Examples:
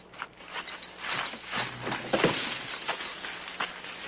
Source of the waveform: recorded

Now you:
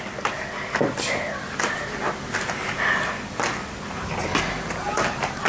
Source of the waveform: recorded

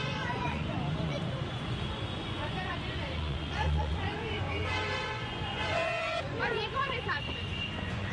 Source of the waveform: remade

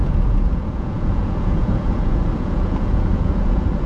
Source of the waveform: remade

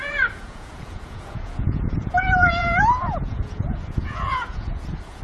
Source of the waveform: remade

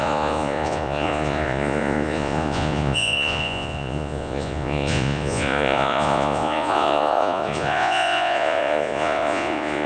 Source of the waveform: remade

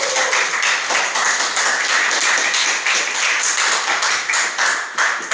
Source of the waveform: recorded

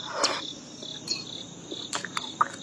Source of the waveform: recorded